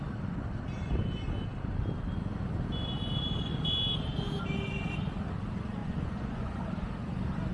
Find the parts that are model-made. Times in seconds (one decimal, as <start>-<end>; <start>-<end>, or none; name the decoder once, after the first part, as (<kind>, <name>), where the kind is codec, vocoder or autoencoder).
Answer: 5.8-6.6 (vocoder, Vocos)

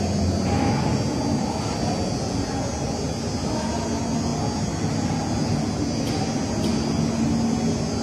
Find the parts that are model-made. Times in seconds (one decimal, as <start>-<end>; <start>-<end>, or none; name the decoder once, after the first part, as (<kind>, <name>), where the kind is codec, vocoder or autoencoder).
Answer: none

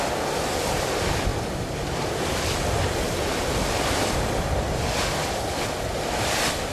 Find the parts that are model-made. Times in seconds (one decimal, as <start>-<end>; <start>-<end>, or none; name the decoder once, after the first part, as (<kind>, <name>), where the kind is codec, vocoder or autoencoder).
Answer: none

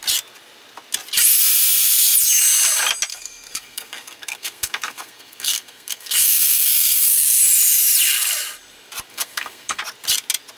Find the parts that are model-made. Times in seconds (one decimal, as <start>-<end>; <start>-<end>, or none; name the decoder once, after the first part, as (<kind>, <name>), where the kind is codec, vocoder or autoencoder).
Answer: 3.1-7.4 (codec, SNAC); 9.1-9.8

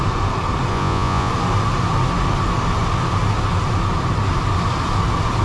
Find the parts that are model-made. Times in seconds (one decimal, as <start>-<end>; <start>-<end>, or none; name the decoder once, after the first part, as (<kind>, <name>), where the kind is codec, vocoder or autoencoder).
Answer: 0.7-1.3 (vocoder, Vocos)